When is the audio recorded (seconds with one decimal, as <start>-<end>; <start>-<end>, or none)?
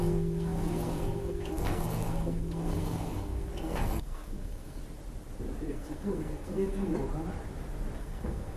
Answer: 4.8-5.7; 6.9-8.0